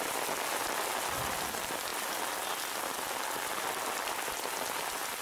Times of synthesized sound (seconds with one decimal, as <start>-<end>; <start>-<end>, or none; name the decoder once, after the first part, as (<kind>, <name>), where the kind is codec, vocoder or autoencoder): none